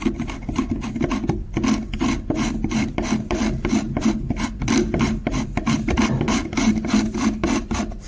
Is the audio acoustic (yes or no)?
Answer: no